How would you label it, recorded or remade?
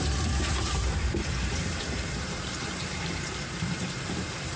remade